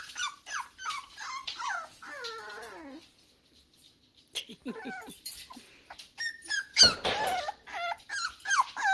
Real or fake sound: real